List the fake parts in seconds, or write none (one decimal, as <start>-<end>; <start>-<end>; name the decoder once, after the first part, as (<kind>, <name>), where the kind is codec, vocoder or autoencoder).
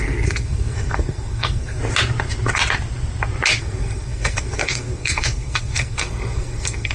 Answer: 0.0-1.8 (codec, SNAC); 3.6-6.9